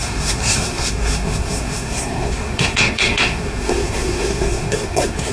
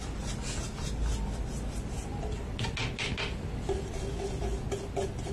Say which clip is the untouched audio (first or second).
second